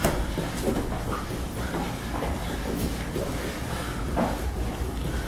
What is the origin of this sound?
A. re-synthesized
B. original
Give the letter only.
B